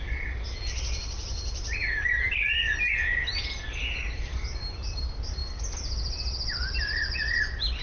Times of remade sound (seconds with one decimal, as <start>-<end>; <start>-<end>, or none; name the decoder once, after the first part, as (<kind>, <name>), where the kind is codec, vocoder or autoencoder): none